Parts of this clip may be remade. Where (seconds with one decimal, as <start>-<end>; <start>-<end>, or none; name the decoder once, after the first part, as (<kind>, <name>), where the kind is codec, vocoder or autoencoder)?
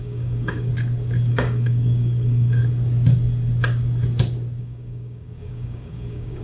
0.0-0.7 (codec, DAC); 1.3-2.6; 4.6-6.4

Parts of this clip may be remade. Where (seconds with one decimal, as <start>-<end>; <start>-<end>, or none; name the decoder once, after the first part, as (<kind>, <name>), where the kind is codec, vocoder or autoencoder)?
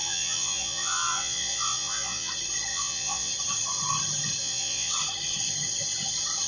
0.0-2.3 (vocoder, Vocos); 2.7-3.3; 4.4-4.9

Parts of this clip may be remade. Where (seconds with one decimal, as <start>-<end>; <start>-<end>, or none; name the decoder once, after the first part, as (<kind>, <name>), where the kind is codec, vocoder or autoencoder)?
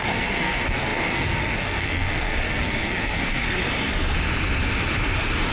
0.0-3.6 (codec, SNAC)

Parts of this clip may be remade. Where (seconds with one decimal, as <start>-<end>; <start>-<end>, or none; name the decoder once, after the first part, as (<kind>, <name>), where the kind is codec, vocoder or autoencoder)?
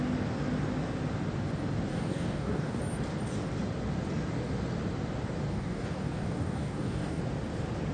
1.9-2.8 (codec, DAC); 5.5-7.2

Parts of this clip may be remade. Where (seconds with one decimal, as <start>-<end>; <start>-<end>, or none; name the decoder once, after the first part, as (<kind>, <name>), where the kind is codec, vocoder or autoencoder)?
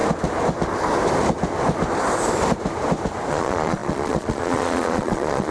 3.3-5.5 (vocoder, Vocos)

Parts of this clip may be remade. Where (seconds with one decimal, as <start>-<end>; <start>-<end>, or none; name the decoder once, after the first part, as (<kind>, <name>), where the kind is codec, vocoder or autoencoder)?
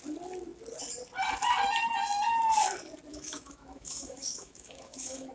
3.1-5.3 (autoencoder, DAC-VAE)